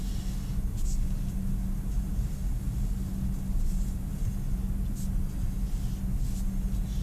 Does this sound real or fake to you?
real